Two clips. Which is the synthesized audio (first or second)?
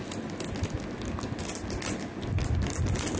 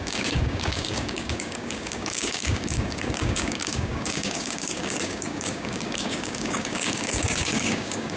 second